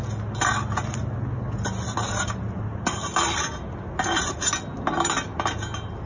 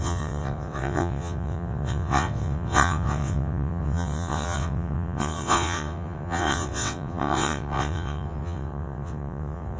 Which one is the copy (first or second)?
second